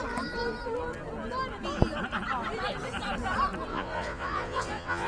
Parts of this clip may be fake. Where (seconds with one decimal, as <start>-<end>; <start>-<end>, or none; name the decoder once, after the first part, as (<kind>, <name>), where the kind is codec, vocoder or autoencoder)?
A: 3.7-5.1 (vocoder, Vocos)